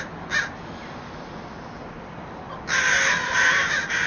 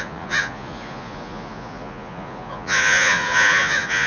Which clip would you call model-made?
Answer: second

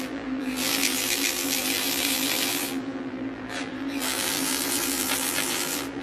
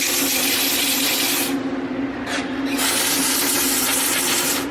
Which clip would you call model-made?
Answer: first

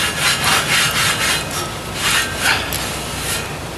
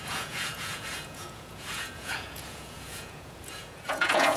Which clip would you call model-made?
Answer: second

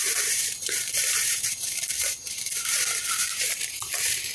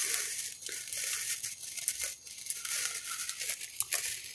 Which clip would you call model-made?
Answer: first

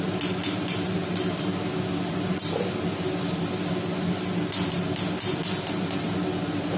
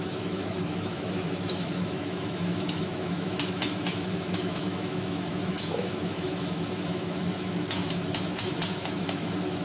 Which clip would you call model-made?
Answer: second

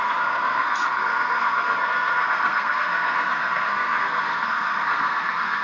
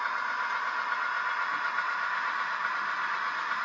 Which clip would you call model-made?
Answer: first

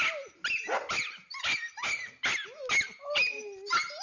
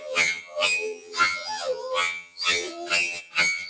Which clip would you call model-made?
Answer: second